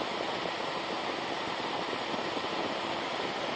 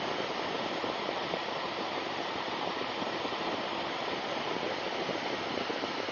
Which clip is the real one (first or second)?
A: first